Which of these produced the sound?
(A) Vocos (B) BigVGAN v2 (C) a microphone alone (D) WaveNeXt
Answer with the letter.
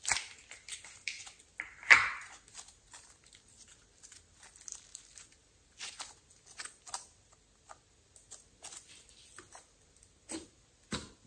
C